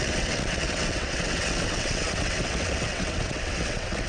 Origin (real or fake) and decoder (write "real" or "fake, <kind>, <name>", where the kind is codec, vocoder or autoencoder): fake, vocoder, WaveNeXt